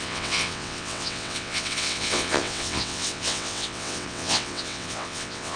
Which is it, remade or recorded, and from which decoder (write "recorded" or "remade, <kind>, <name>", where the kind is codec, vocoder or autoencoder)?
remade, vocoder, WaveNeXt